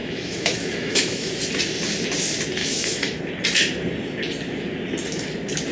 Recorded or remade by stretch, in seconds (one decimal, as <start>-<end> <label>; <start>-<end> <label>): 0.0-1.3 remade; 1.3-2.6 recorded; 2.6-3.2 remade; 3.2-5.7 recorded